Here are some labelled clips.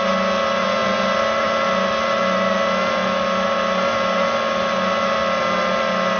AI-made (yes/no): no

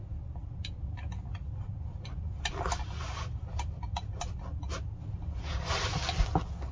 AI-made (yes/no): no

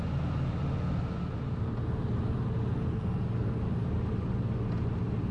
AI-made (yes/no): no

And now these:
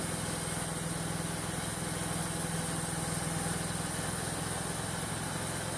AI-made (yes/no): no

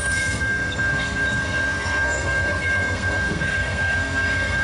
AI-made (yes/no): yes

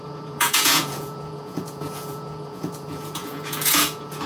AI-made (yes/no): yes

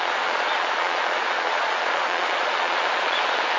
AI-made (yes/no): yes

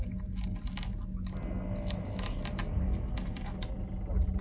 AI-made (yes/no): no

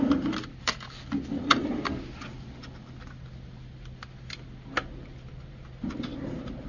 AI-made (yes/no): no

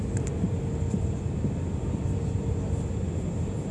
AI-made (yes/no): no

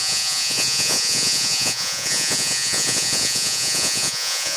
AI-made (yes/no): yes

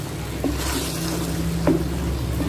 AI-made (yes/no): no